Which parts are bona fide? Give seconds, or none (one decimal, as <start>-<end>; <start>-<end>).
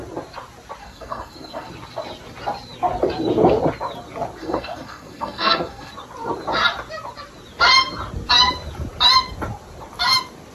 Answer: 0.0-0.8; 1.7-4.4; 5.9-10.5